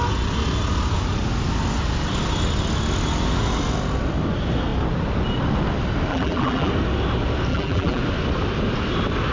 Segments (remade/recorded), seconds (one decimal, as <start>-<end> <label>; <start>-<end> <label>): 0.0-6.1 recorded; 6.1-6.7 remade; 6.7-7.5 recorded; 7.5-8.0 remade; 8.0-9.3 recorded